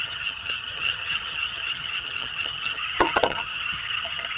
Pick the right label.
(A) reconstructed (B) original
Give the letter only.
A